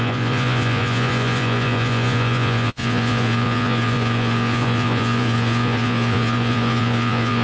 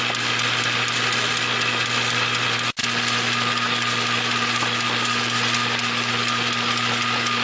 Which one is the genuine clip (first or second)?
second